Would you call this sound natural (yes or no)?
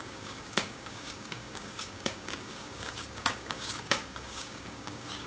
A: no